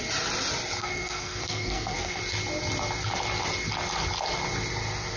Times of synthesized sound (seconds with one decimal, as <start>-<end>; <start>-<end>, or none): 0.8-2.2